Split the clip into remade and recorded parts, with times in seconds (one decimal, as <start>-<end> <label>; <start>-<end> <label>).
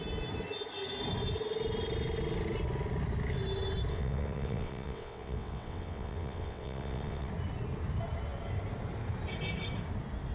0.0-3.9 recorded; 3.9-7.3 remade; 7.3-10.3 recorded